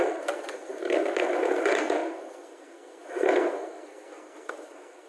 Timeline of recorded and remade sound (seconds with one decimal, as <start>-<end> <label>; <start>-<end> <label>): 0.0-5.1 remade

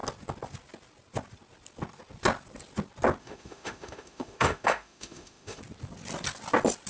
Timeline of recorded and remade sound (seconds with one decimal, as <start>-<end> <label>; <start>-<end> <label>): 0.0-3.2 recorded; 3.2-5.6 remade; 5.6-6.9 recorded

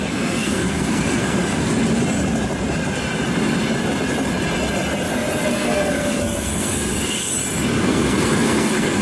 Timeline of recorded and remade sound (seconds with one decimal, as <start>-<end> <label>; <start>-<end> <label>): 0.0-1.4 remade; 1.4-5.5 recorded; 5.5-7.3 remade; 7.3-7.8 recorded; 7.8-9.0 remade

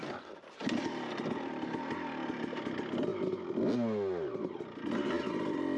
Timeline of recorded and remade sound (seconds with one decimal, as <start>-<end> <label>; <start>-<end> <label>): 0.0-5.8 recorded

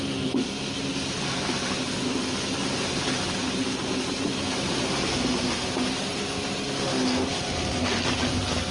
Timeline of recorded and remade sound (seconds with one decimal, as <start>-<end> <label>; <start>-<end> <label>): 0.0-8.7 recorded

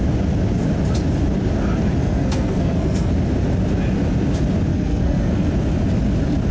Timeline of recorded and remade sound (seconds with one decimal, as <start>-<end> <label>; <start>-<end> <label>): 0.0-2.0 recorded; 2.0-3.1 remade; 3.1-4.7 recorded; 4.7-5.5 remade; 5.5-6.5 recorded

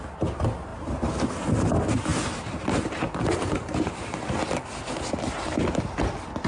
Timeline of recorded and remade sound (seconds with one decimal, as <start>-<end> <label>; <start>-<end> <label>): 0.0-0.7 recorded; 0.7-1.3 remade; 1.3-2.1 recorded; 2.1-4.4 remade; 4.4-6.5 recorded

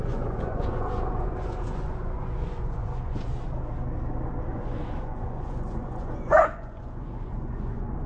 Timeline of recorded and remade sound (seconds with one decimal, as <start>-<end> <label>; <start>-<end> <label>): 0.0-3.3 remade; 3.3-4.5 recorded; 4.5-8.1 remade